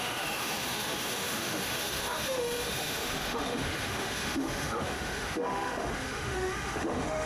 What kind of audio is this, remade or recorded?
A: remade